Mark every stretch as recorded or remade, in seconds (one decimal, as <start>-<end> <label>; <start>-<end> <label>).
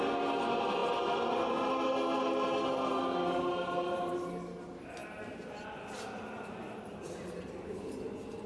0.0-8.5 recorded